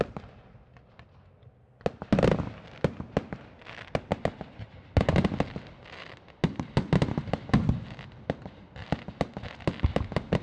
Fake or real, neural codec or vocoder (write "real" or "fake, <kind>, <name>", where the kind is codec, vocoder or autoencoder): real